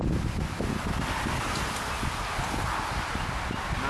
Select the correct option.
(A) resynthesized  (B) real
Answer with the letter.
B